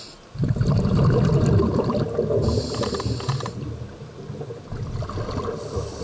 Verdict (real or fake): real